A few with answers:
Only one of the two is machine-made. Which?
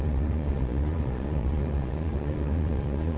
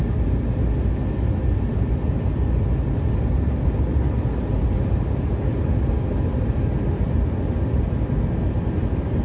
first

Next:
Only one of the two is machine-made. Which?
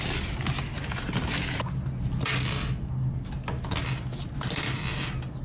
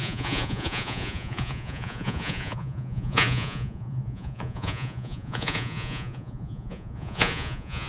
second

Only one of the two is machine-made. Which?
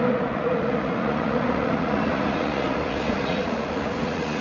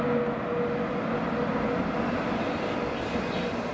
first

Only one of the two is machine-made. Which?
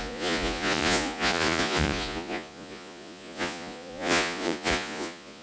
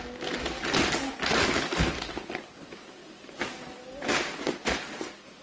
first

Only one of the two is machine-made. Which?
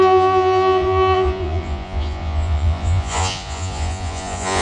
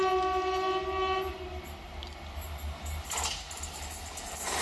first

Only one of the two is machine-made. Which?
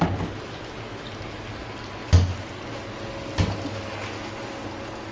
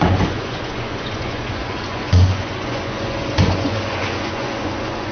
second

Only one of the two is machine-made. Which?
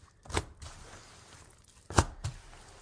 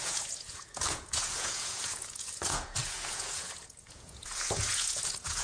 second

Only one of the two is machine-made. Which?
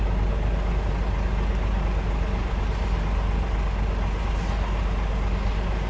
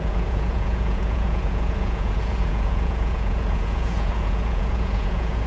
second